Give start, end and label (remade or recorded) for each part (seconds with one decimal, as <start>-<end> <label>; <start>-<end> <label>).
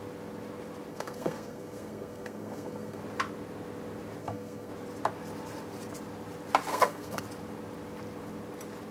0.0-0.9 recorded; 0.9-3.0 remade; 3.0-4.2 recorded; 4.2-4.7 remade; 4.7-6.7 recorded; 6.7-7.2 remade; 7.2-8.9 recorded